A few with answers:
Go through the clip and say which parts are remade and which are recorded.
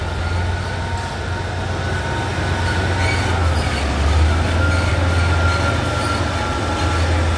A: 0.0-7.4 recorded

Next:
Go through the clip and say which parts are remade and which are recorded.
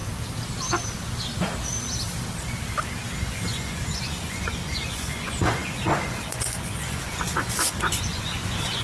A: 0.0-3.2 recorded; 3.2-8.8 remade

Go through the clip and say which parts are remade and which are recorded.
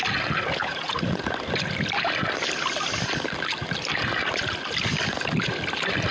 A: 0.0-0.6 recorded; 0.6-1.2 remade; 1.2-6.1 recorded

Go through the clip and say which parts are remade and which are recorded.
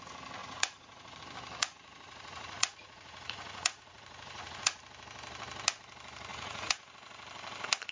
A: 0.0-0.4 recorded; 0.4-1.2 remade; 1.2-1.6 recorded; 1.6-4.8 remade; 4.8-6.3 recorded; 6.3-6.9 remade; 6.9-7.9 recorded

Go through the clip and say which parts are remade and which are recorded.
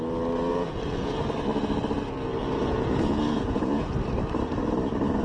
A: 0.0-0.5 recorded; 0.5-1.2 remade; 1.2-2.4 recorded; 2.4-3.9 remade; 3.9-5.2 recorded